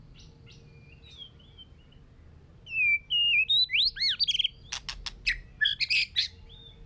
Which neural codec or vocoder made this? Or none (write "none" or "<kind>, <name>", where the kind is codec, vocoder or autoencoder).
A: none